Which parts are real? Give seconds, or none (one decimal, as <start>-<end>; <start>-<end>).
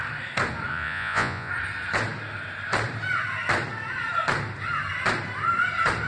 0.0-0.7; 1.5-6.1